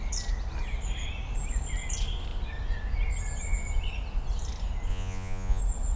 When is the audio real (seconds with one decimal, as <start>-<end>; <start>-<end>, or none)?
0.0-4.9; 5.6-6.0